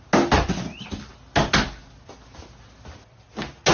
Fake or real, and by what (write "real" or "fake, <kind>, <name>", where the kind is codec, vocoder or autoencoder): real